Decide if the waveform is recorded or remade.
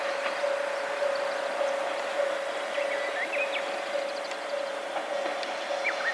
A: recorded